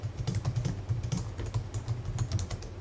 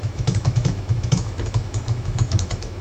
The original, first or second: first